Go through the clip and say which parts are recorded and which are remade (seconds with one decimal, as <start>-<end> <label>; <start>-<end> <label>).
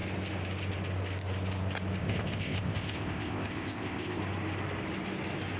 0.0-2.0 recorded; 2.0-4.2 remade; 4.2-5.6 recorded